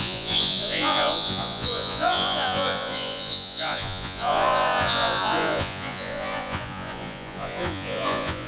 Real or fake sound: fake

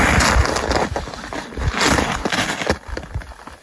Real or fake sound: real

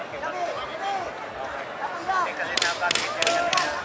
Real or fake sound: real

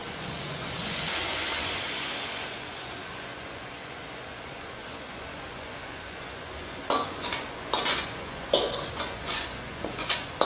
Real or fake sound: fake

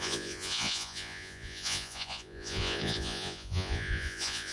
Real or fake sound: fake